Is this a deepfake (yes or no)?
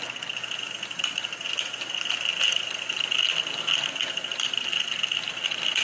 no